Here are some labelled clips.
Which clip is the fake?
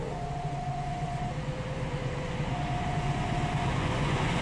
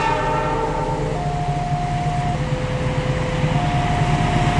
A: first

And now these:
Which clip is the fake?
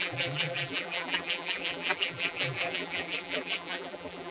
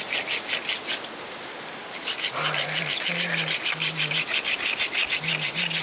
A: first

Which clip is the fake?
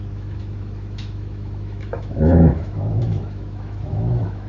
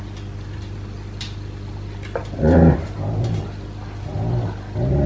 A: first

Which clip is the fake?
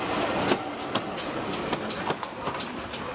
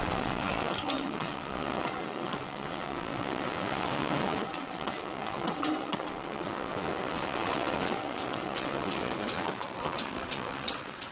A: second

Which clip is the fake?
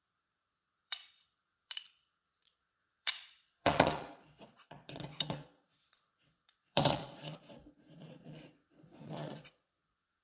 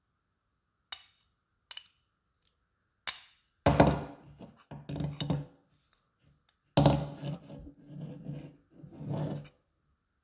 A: first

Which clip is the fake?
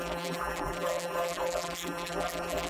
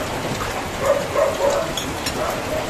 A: first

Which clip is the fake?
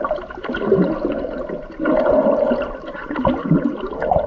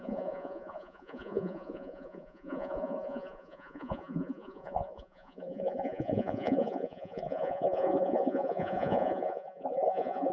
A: second